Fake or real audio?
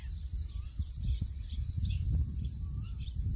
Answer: fake